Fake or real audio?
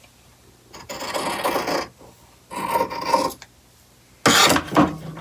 real